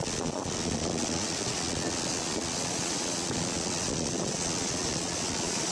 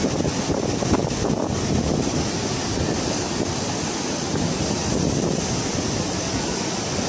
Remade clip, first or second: first